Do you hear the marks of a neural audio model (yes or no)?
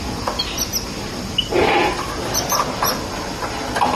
no